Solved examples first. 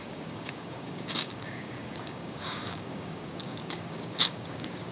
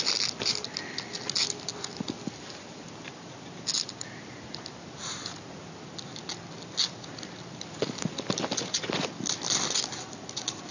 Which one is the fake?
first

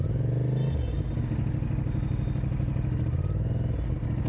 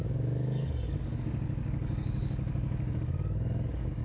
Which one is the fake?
second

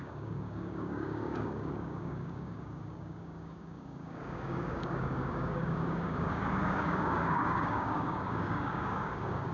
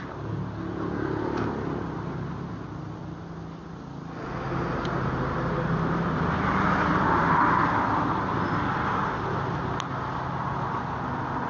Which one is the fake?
first